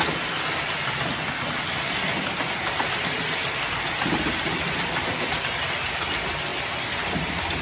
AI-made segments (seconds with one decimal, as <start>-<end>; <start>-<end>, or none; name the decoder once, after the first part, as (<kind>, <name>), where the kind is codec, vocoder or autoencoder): none